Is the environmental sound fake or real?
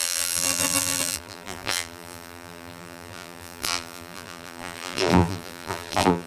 fake